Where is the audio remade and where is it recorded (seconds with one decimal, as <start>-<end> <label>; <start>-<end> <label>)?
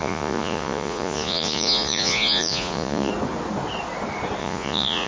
0.0-3.1 remade; 3.1-4.4 recorded; 4.4-5.1 remade